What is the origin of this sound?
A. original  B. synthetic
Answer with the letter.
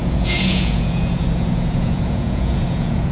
B